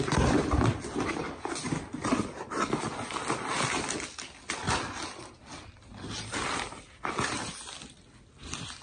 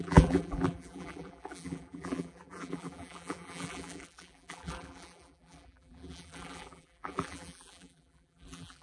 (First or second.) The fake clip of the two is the second